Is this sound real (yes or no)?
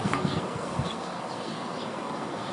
no